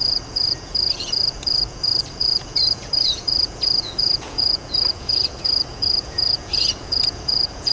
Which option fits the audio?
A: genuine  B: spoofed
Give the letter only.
B